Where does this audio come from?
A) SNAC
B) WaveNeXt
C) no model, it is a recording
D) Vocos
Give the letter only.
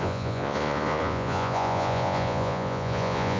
D